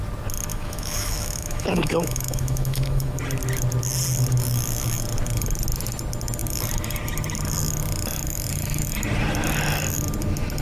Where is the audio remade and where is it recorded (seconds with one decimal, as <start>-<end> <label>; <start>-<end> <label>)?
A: 0.0-0.5 recorded; 0.5-3.2 remade; 3.2-10.6 recorded